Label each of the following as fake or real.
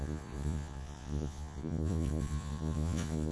fake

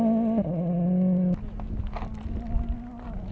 real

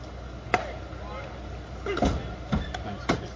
real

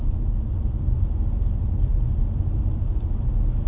real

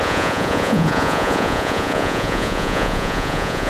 fake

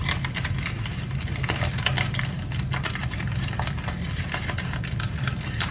real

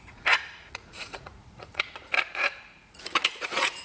fake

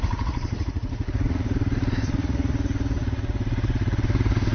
fake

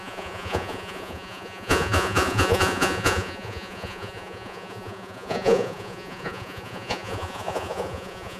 fake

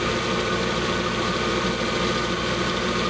real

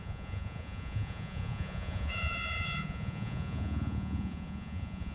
fake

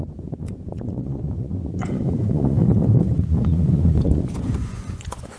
fake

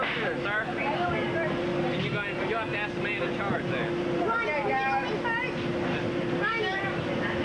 real